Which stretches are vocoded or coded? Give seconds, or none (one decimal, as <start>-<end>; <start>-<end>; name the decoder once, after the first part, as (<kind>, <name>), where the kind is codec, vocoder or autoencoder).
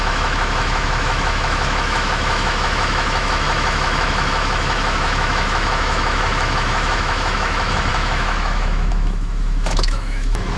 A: 0.0-10.6 (autoencoder, DAC-VAE)